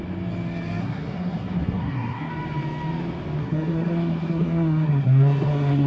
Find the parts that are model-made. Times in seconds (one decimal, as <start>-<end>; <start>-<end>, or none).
0.8-2.3; 3.4-5.9